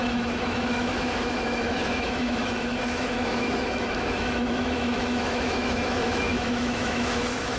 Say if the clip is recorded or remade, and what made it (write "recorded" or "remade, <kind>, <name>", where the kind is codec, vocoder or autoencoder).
remade, autoencoder, DAC-VAE